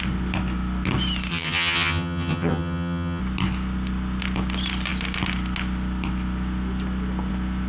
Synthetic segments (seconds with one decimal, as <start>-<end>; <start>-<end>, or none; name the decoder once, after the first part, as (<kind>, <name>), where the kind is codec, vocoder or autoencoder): 1.3-3.2 (vocoder, HiFi-GAN)